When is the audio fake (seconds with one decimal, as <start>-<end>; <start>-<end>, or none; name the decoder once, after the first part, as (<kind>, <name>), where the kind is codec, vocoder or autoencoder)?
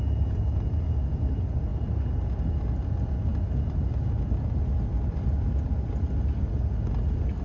none